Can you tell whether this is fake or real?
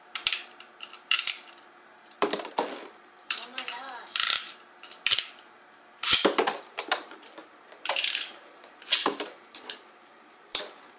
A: fake